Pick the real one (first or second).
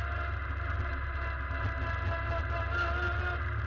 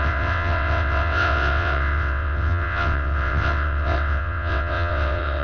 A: first